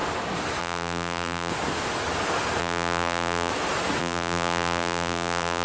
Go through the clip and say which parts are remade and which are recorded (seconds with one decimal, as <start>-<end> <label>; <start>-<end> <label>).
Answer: 0.0-0.6 recorded; 0.6-1.5 remade; 1.5-2.6 recorded; 2.6-3.5 remade; 3.5-4.0 recorded; 4.0-5.6 remade